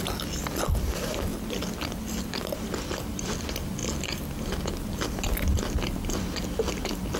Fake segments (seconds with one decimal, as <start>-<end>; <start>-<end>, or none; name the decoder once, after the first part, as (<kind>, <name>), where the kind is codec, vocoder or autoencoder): none